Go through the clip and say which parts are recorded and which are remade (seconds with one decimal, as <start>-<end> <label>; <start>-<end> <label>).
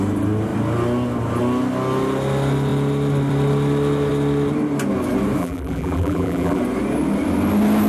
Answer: 0.0-5.4 recorded; 5.4-6.6 remade; 6.6-7.9 recorded